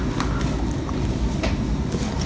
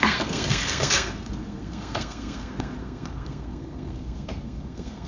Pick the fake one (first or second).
second